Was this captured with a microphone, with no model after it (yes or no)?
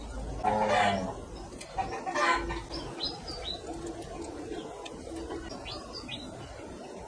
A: yes